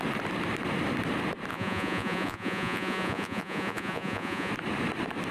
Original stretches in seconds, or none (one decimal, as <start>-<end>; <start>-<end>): 0.0-1.5; 4.5-5.3